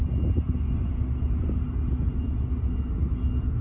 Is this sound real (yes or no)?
yes